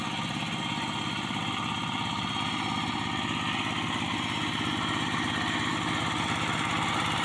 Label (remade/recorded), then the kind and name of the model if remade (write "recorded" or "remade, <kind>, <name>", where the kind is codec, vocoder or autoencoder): recorded